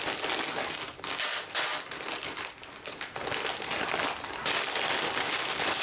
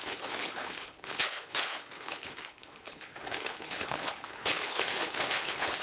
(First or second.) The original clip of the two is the first